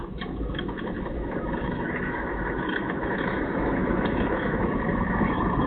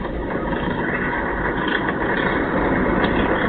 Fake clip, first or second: first